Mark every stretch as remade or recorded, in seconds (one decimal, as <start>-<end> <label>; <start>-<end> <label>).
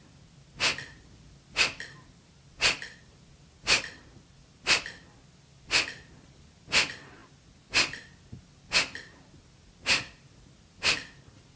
0.0-11.6 recorded